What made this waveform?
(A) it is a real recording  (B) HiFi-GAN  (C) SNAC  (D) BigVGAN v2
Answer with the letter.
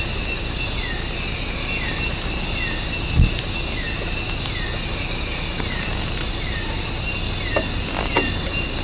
A